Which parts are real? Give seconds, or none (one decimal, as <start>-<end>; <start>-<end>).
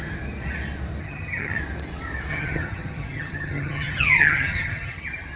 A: 0.0-1.0; 1.6-2.3; 5.0-5.4